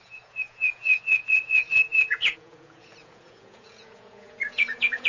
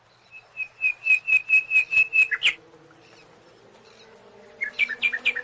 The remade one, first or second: first